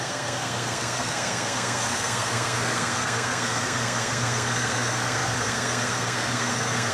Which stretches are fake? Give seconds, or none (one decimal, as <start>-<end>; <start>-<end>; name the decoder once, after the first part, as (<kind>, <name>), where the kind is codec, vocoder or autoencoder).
0.0-6.9 (codec, SNAC)